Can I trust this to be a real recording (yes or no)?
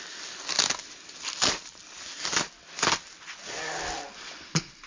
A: yes